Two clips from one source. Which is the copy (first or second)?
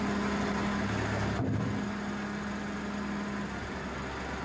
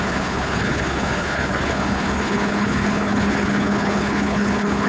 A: second